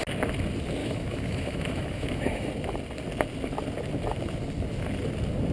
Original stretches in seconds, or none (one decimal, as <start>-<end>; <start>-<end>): 0.0-0.8; 2.5-5.5